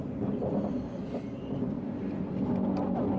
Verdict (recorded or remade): recorded